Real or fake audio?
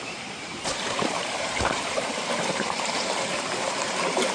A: fake